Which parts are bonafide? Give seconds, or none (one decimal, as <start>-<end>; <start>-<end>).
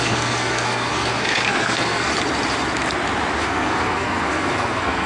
2.1-3.4